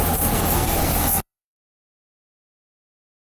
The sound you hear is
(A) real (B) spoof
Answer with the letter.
B